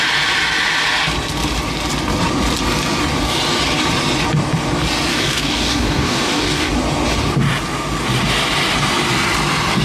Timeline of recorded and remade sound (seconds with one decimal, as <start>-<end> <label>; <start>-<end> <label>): 0.0-5.1 recorded; 5.1-6.7 remade; 6.7-9.8 recorded